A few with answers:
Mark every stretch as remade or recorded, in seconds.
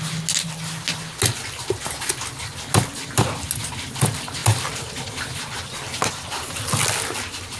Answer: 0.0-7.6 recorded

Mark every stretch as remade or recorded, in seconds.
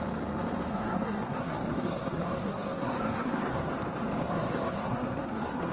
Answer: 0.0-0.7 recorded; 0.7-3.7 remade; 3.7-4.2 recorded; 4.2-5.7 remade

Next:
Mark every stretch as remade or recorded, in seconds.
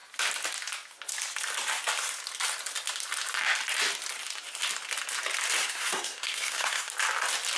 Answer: 0.0-5.6 recorded; 5.6-6.9 remade; 6.9-7.6 recorded